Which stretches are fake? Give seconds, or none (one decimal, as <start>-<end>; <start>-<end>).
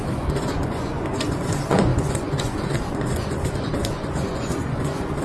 0.0-5.2